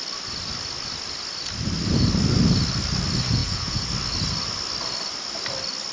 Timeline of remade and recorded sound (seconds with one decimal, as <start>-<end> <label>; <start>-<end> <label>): 0.0-3.4 recorded; 3.4-3.9 remade; 3.9-5.9 recorded

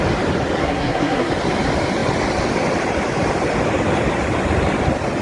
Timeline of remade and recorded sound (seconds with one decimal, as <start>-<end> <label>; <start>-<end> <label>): 0.0-0.6 recorded; 0.6-1.3 remade; 1.3-5.2 recorded

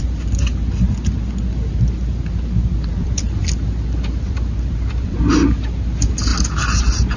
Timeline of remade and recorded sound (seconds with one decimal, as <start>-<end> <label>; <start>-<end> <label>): 0.0-2.9 recorded; 2.9-5.2 remade; 5.2-7.2 recorded